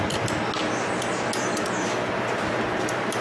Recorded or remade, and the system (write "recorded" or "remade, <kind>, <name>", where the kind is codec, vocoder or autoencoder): recorded